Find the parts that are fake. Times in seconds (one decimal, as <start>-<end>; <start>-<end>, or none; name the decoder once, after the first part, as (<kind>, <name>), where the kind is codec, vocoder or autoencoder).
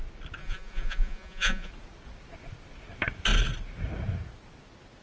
0.4-1.7 (vocoder, Vocos)